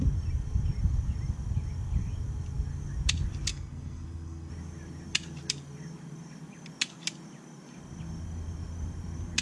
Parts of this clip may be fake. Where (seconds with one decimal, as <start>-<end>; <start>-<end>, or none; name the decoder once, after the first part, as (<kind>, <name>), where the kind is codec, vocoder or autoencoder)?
3.5-4.5 (codec, SNAC)